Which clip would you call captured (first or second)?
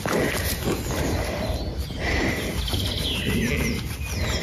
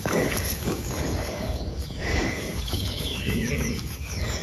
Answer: first